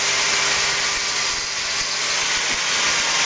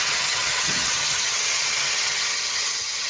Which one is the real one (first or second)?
first